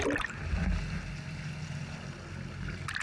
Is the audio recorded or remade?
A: recorded